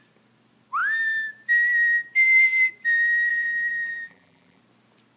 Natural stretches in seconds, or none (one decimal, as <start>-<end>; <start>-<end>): 0.0-3.3; 4.6-5.2